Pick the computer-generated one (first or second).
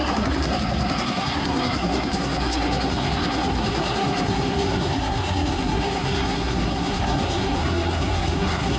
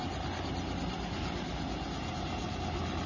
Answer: first